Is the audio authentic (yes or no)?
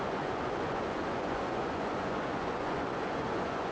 no